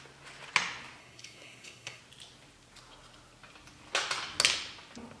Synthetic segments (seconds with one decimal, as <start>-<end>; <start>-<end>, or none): 1.0-2.0